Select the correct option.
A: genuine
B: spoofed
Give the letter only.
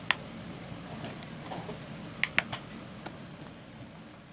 A